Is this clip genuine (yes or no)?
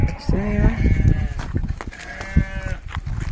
yes